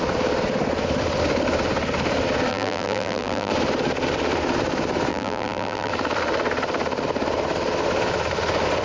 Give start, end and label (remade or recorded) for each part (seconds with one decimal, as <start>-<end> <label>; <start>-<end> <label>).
0.0-2.5 recorded; 2.5-3.5 remade; 3.5-5.1 recorded; 5.1-5.9 remade; 5.9-8.8 recorded